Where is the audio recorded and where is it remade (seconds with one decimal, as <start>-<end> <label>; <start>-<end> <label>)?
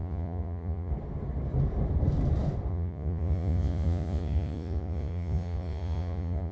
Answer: 0.0-0.9 remade; 0.9-2.7 recorded; 2.7-6.5 remade